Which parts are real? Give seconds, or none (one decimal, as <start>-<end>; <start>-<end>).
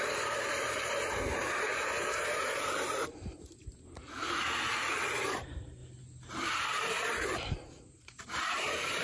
5.8-6.4